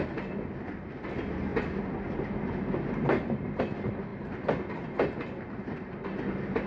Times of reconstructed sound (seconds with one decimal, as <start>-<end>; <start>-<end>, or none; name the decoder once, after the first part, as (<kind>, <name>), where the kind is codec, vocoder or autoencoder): none